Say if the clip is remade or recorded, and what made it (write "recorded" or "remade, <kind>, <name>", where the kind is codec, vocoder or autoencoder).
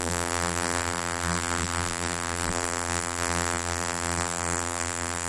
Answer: remade, vocoder, BigVGAN v2